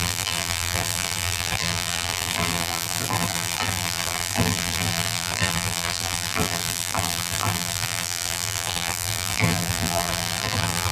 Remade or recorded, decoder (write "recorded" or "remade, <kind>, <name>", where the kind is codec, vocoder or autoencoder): remade, vocoder, BigVGAN v2